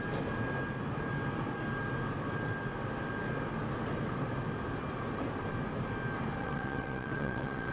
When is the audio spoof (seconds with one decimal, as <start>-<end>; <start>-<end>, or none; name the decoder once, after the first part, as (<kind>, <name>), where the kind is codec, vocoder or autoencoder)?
6.4-7.7 (vocoder, WaveNeXt)

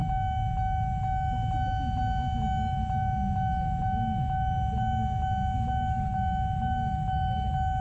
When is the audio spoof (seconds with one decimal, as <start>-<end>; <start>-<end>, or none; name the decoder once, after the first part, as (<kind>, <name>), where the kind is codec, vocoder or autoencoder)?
none

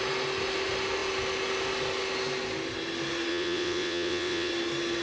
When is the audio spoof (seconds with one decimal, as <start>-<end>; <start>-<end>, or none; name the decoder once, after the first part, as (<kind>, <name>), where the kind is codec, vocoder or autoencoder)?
3.3-4.5 (vocoder, WaveNeXt)

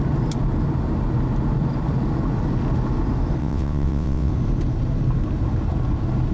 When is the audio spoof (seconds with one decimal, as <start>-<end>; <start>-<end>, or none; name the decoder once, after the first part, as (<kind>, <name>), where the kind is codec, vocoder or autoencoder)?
3.4-4.3 (vocoder, WaveNeXt)